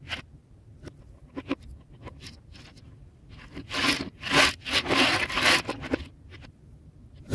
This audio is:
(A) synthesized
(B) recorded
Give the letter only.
B